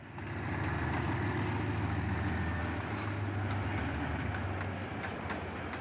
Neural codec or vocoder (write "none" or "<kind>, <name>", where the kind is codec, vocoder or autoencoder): none